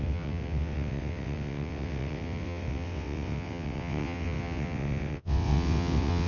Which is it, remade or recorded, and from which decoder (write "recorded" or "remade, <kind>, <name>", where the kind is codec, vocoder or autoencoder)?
remade, vocoder, WaveNeXt